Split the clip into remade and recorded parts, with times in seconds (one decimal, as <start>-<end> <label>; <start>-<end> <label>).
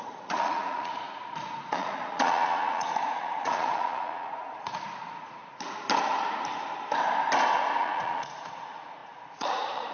0.0-5.4 remade; 5.4-7.8 recorded; 7.8-9.9 remade